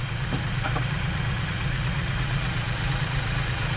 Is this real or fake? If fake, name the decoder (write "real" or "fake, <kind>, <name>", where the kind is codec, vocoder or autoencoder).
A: fake, vocoder, Vocos